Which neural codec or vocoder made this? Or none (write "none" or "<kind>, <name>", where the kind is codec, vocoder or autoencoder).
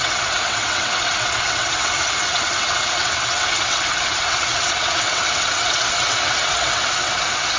vocoder, WaveNeXt